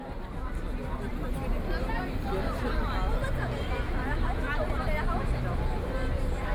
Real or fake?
real